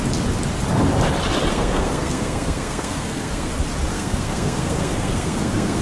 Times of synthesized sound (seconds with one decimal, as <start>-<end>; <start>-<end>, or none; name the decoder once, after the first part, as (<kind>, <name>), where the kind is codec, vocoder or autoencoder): 1.5-3.5 (codec, SNAC); 3.9-5.8